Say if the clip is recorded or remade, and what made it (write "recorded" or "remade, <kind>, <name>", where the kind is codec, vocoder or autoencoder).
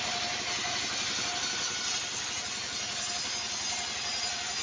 recorded